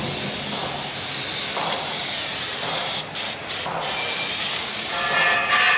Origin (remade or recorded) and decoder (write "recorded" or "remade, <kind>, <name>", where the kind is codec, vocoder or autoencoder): recorded